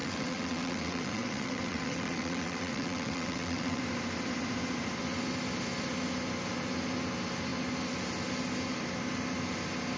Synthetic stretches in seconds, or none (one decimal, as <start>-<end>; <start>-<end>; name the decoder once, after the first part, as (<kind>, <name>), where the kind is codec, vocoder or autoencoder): 0.0-3.8 (vocoder, WaveNeXt)

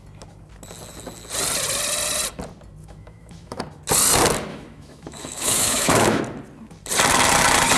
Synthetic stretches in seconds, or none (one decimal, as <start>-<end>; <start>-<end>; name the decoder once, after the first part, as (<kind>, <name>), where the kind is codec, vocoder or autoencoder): 2.8-3.6 (autoencoder, DAC-VAE); 4.5-6.2

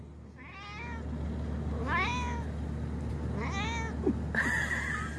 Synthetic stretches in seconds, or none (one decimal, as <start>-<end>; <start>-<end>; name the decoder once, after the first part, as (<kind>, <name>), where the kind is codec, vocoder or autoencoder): none

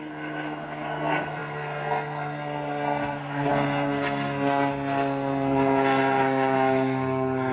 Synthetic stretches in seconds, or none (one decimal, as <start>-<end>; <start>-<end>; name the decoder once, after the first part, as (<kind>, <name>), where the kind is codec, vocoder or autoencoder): 0.0-7.5 (codec, SNAC)

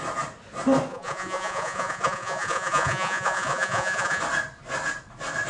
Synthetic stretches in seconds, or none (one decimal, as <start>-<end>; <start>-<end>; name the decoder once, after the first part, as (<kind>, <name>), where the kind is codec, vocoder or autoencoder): 0.9-4.2 (vocoder, Vocos)

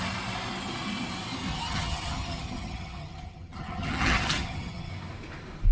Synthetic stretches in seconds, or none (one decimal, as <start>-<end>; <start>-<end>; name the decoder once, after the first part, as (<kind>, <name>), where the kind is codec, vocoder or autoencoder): 1.5-4.9 (vocoder, HiFi-GAN)